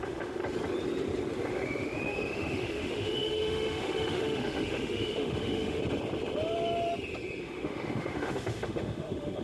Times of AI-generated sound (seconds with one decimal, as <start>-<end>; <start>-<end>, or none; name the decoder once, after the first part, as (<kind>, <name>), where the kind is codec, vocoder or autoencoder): 0.0-0.4 (autoencoder, DAC-VAE); 1.5-5.8; 7.4-9.4